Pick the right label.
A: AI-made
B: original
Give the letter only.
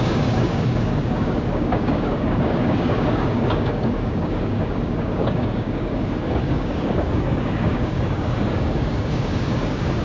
A